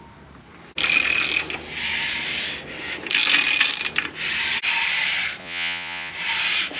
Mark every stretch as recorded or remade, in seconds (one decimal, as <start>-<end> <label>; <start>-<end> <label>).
0.0-5.4 recorded; 5.4-6.1 remade; 6.1-6.8 recorded